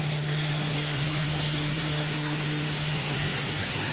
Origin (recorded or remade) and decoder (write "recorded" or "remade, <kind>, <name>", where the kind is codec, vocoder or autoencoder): remade, codec, SNAC